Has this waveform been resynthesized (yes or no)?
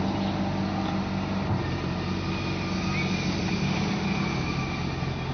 no